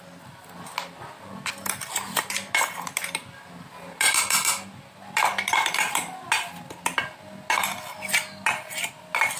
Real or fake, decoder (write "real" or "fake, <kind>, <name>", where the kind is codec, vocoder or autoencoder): real